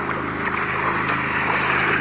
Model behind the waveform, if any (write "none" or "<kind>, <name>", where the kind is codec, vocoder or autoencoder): none